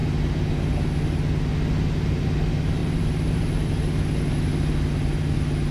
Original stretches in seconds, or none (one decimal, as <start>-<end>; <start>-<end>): 0.0-2.8; 3.7-5.7